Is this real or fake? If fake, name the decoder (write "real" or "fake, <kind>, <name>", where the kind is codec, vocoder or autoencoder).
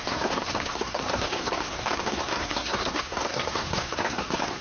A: fake, codec, SNAC